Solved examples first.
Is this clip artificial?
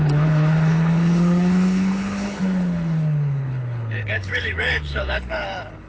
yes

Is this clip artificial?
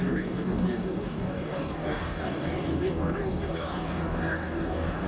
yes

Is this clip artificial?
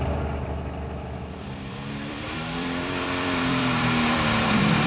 yes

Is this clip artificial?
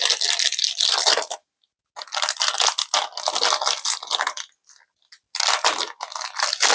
no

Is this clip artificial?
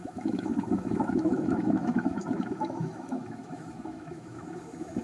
yes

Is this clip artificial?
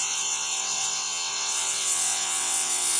yes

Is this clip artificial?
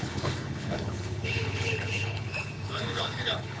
yes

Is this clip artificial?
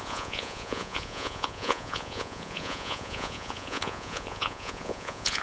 yes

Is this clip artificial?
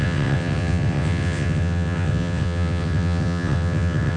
yes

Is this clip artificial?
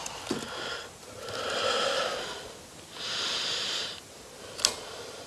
no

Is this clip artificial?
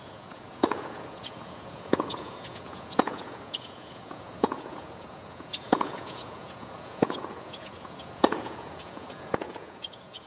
yes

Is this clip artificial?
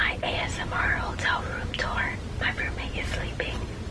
no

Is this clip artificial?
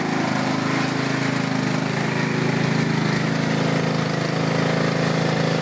no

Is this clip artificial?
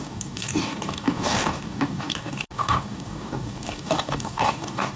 yes